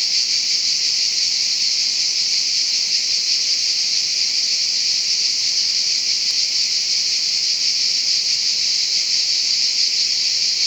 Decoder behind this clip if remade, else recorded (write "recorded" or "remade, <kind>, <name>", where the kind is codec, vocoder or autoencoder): recorded